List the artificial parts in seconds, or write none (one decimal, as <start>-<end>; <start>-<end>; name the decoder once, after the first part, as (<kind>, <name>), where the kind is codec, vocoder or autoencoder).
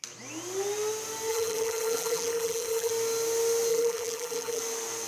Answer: 1.3-2.9 (vocoder, BigVGAN v2); 3.7-4.6